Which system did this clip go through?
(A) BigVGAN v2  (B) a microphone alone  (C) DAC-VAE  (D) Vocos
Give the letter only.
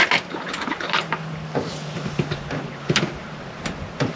B